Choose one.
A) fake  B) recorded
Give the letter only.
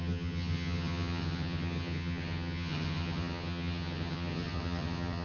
A